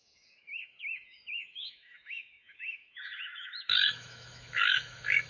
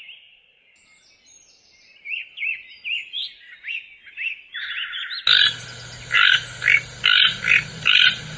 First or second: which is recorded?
second